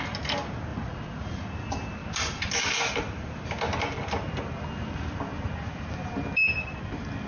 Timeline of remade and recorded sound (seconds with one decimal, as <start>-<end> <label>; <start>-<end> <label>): 0.0-0.7 recorded; 0.7-1.5 remade; 1.5-7.3 recorded